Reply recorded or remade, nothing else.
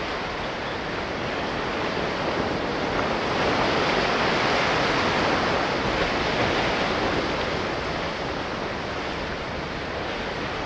recorded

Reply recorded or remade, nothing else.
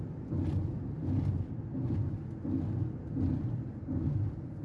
recorded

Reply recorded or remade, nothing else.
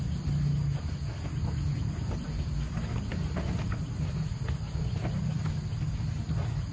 recorded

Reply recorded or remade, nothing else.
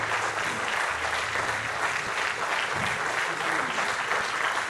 remade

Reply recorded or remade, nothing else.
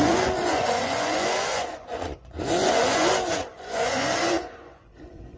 remade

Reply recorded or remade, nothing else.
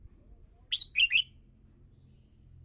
recorded